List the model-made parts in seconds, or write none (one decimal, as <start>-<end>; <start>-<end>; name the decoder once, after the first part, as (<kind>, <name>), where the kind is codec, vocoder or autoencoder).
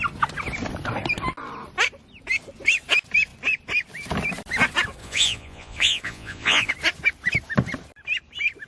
5.0-6.7 (vocoder, Vocos)